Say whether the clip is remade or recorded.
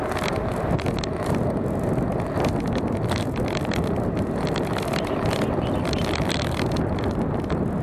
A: recorded